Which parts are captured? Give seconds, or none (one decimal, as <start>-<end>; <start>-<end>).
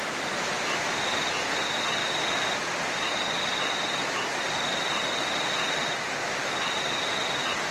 0.0-7.7